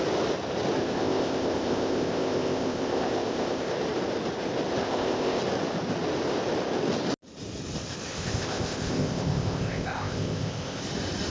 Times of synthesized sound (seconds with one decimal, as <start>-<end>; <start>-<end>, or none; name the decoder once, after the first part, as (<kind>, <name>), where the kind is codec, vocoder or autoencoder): 0.8-3.7 (codec, ZipCodec); 4.8-5.4; 8.1-10.8